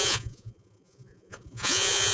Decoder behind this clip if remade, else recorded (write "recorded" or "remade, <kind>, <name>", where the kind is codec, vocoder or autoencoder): remade, vocoder, Vocos